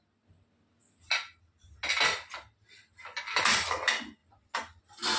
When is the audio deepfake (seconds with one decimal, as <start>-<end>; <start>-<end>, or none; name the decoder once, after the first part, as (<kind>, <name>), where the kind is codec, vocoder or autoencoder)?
none